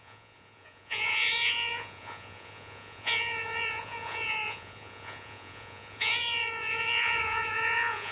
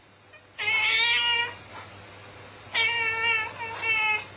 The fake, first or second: first